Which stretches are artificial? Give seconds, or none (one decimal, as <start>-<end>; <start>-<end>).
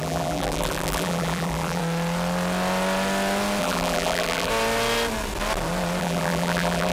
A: 0.0-1.8; 3.6-4.5; 6.0-6.9